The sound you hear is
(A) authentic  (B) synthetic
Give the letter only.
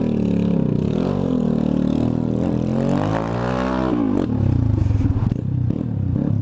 A